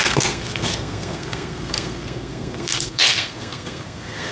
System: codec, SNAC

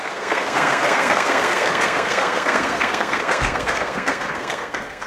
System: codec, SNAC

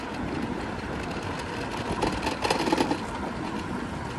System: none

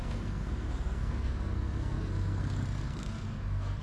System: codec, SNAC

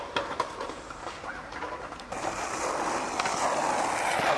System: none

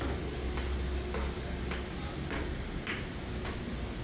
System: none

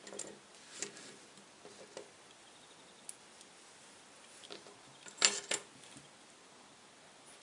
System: none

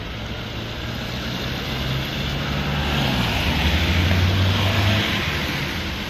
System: none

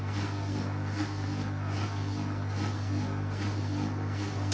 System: codec, SNAC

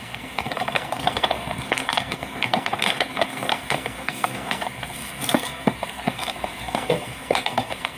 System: codec, SNAC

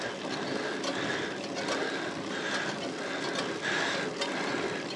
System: none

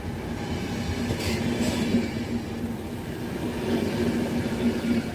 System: none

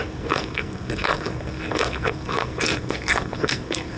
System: codec, SNAC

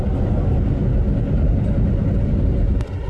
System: none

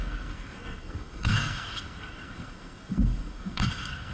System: codec, SNAC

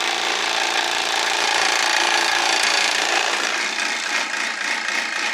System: none